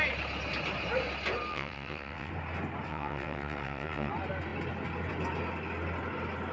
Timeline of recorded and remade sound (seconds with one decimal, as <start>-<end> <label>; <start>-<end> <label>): 0.0-1.5 recorded; 1.5-2.3 remade; 2.3-2.9 recorded; 2.9-4.1 remade; 4.1-6.5 recorded